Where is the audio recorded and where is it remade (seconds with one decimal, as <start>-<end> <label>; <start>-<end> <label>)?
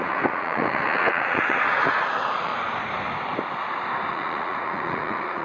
0.0-2.5 remade; 2.5-4.1 recorded; 4.1-5.4 remade